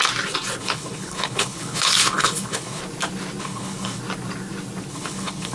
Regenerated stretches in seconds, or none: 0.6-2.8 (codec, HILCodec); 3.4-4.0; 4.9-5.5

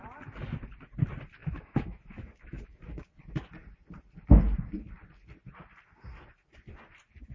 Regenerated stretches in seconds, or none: 1.4-2.8 (autoencoder, DAC-VAE)

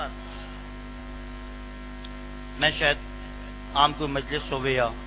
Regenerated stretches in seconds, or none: none

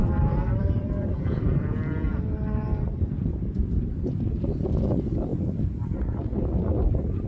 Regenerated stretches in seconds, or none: 0.0-2.1 (vocoder, BigVGAN v2); 4.5-5.3